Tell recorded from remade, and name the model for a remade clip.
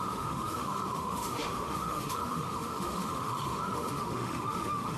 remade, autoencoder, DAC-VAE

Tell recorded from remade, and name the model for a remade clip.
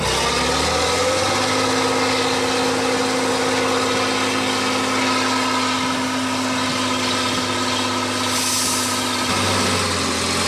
recorded